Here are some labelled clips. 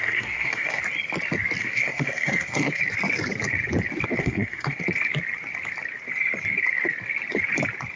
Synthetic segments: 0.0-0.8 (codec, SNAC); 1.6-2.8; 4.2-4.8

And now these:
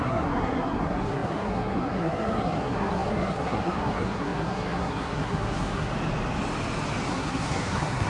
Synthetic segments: 0.0-5.9 (codec, SNAC); 7.1-8.1

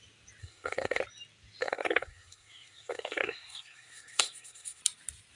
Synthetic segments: 0.4-1.0 (codec, SNAC); 1.6-4.8

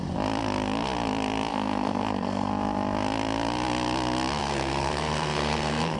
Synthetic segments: 1.5-2.5 (codec, SNAC); 4.4-6.0

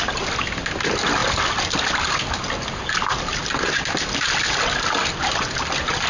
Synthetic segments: none

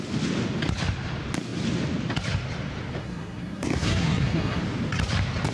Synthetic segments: 3.0-4.6 (codec, SNAC)

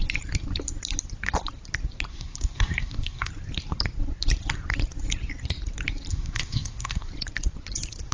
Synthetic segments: 2.1-3.3 (codec, SNAC); 6.1-7.1